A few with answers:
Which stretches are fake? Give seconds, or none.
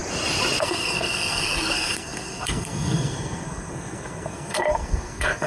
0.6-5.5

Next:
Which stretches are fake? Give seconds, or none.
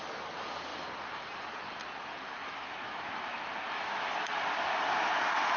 2.4-4.1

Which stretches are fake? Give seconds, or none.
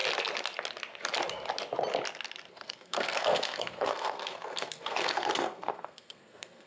2.5-6.7